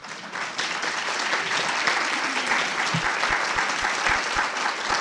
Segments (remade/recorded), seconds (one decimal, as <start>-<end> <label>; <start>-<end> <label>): 0.0-5.0 remade